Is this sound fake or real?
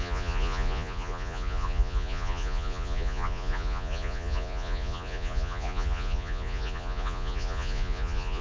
fake